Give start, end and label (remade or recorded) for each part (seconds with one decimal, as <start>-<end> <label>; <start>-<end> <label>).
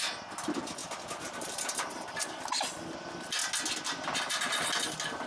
0.0-0.8 recorded; 0.8-2.3 remade; 2.3-5.3 recorded